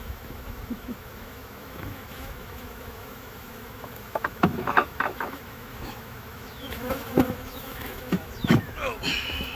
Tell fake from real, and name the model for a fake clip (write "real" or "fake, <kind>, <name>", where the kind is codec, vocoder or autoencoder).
fake, autoencoder, DAC-VAE